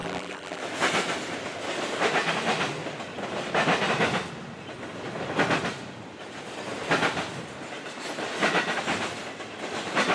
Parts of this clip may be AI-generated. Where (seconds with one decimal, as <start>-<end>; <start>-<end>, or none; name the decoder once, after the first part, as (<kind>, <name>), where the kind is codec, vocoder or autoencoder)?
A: 0.0-0.6 (vocoder, BigVGAN v2)